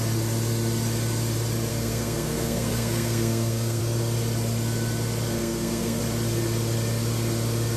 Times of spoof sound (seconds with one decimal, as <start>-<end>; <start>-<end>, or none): 1.7-3.8; 5.4-6.0